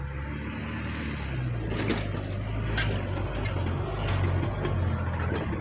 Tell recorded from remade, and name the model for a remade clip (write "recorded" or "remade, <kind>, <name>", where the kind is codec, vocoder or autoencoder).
recorded